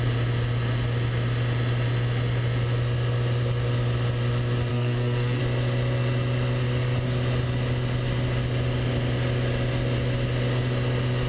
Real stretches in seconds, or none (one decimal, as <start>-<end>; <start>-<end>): 0.0-4.7; 5.4-11.3